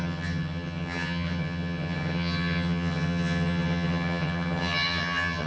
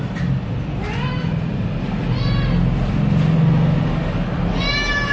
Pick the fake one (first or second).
first